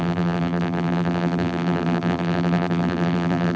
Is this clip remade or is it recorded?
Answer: remade